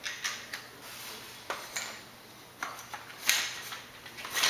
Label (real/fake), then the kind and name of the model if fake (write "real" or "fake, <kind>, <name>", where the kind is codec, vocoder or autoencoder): real